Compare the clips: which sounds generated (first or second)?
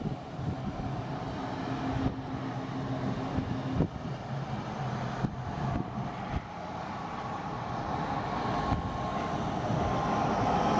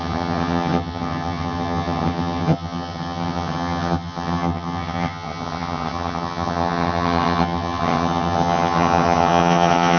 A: second